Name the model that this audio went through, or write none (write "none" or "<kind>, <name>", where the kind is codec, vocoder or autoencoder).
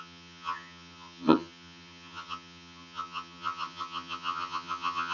vocoder, HiFi-GAN